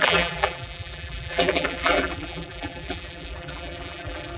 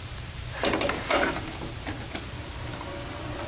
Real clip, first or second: second